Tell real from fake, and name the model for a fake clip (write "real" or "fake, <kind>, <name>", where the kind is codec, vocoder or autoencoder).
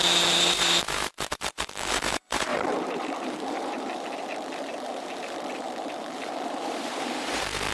fake, vocoder, BigVGAN v2